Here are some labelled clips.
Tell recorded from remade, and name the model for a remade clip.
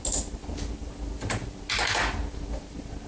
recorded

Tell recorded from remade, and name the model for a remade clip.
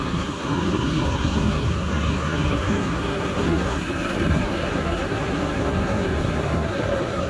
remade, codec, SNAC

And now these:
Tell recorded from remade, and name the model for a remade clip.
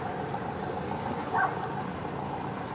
recorded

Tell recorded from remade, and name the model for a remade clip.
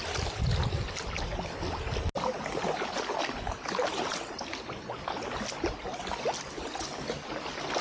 recorded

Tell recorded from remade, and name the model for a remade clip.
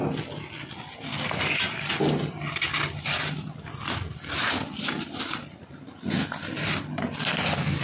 recorded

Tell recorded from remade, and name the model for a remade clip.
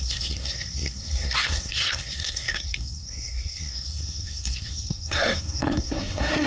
remade, codec, SNAC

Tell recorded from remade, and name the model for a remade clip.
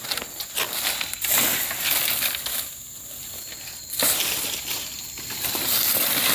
recorded